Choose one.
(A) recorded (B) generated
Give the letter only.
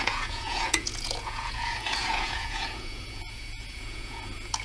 B